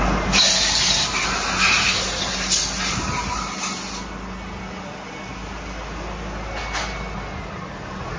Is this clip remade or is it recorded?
recorded